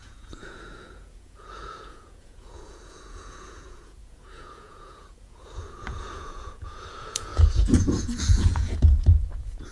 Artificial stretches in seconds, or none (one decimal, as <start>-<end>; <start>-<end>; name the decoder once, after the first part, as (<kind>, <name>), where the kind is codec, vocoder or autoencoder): 0.0-9.7 (vocoder, Vocos)